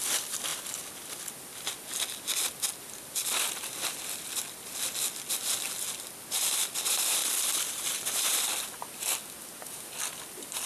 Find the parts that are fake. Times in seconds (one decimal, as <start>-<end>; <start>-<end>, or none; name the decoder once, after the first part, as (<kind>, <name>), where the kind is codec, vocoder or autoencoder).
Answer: 7.2-8.9 (vocoder, BigVGAN v2)